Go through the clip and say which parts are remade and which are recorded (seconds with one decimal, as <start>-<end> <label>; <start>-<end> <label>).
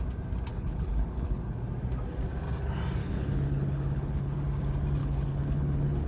0.0-0.5 recorded; 0.5-1.4 remade; 1.4-3.0 recorded; 3.0-4.4 remade; 4.4-5.0 recorded; 5.0-6.1 remade